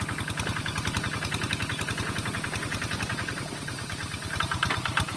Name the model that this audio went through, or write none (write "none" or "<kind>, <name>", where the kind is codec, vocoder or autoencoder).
none